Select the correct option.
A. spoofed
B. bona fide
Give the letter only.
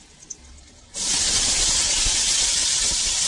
B